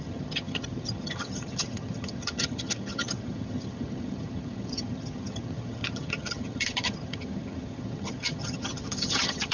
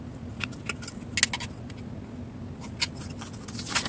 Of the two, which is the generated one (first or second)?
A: first